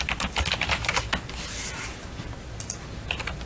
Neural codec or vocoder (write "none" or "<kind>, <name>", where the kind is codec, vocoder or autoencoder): none